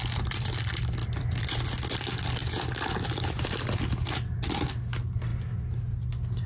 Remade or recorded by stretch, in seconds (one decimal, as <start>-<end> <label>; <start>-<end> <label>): 0.0-1.0 recorded; 1.0-1.6 remade; 1.6-2.4 recorded; 2.4-3.3 remade; 3.3-6.5 recorded